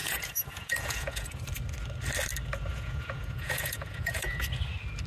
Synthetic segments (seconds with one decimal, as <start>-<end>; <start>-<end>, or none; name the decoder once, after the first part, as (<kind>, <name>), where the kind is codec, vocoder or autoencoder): 0.0-1.4 (vocoder, Vocos); 2.7-4.4